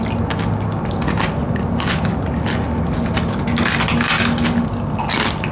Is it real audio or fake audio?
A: real